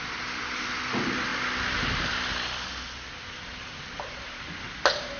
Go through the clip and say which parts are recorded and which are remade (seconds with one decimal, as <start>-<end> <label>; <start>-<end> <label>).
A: 0.0-5.2 recorded